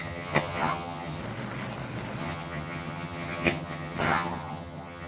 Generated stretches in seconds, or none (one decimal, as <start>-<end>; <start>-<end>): 0.0-1.2; 2.2-5.1